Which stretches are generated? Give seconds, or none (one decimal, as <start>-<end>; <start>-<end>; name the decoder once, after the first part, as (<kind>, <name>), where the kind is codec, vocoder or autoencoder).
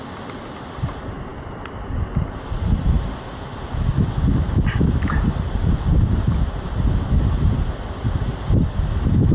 none